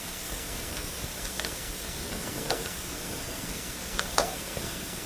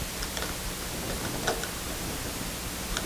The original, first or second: second